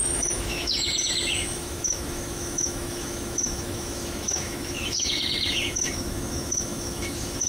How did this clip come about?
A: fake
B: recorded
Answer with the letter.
A